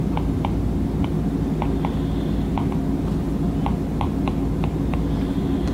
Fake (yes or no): no